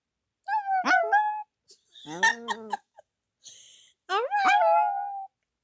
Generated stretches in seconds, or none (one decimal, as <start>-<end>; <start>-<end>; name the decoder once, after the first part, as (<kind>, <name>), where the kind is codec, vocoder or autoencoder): 2.3-3.0 (codec, DAC)

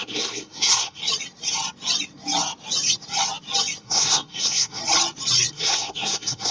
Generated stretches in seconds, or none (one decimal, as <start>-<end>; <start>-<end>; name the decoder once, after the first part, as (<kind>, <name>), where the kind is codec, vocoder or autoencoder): 0.0-1.0 (codec, SNAC); 3.8-4.8; 5.5-6.5

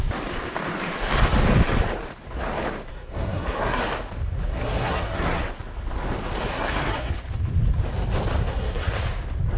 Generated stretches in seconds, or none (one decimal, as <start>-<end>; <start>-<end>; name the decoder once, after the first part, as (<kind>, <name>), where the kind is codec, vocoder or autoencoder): 2.9-3.8 (codec, SNAC); 4.4-5.4; 6.5-7.1; 8.4-8.9

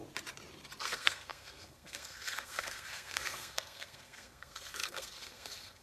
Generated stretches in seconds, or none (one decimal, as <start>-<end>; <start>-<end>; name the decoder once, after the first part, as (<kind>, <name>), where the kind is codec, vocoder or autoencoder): 0.8-5.8 (codec, SNAC)

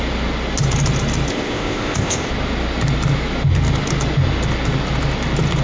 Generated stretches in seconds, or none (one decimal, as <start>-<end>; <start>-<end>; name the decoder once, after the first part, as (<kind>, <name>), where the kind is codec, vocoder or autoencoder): 1.3-2.3 (codec, ZipCodec)

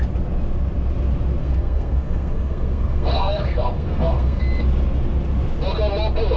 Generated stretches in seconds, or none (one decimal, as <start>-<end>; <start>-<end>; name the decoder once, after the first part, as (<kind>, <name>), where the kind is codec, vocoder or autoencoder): 1.4-4.4 (codec, SNAC)

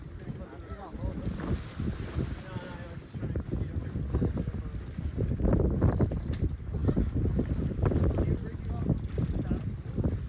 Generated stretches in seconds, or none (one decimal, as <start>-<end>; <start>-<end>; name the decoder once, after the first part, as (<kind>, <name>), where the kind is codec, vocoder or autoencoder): none